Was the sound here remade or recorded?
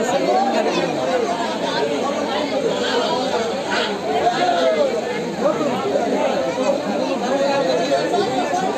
recorded